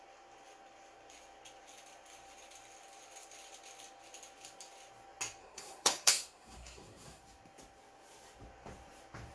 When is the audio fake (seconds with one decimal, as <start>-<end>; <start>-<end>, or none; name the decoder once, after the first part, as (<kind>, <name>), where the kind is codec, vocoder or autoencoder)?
5.4-7.2 (codec, SNAC)